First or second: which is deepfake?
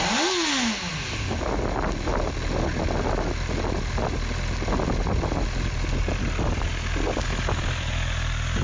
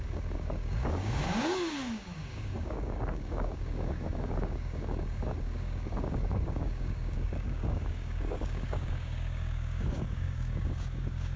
second